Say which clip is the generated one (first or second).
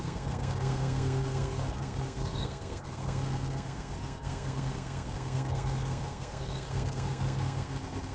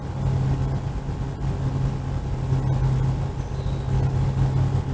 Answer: first